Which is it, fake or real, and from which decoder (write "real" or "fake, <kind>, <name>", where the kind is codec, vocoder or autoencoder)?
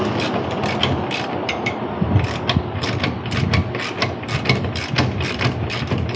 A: real